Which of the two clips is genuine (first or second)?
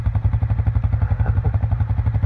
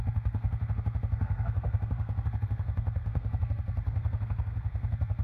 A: first